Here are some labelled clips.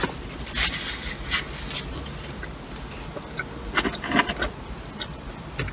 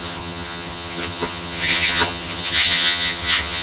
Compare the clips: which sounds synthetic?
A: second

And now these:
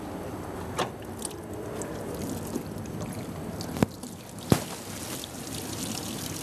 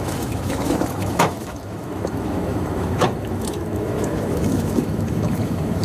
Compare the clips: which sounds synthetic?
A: second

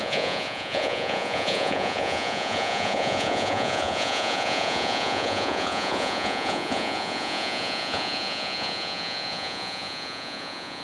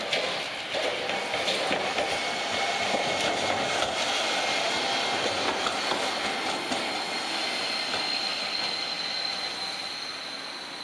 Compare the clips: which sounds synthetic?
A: first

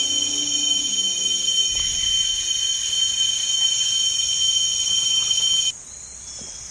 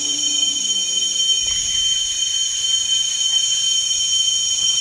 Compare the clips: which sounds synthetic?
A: second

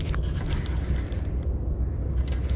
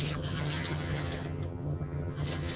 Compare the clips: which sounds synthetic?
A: second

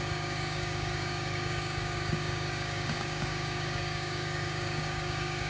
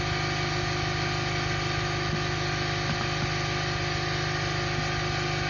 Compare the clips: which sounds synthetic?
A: first